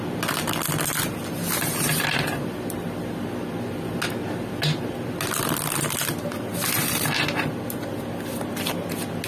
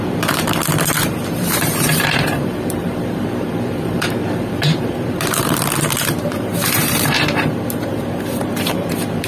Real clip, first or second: first